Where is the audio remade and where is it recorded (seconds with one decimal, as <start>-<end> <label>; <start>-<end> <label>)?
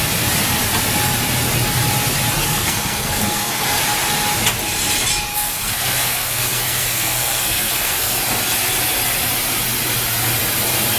0.0-2.4 recorded; 2.4-3.8 remade; 3.8-5.3 recorded; 5.3-8.2 remade; 8.2-11.0 recorded